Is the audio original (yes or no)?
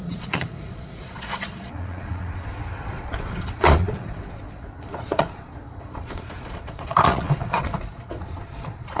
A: no